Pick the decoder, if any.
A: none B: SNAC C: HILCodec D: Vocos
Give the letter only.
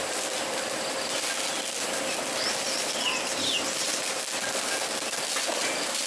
A